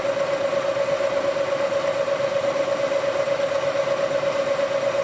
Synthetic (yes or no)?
no